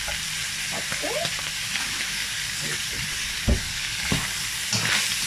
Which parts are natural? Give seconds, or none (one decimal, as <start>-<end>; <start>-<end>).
0.0-1.3; 4.5-5.3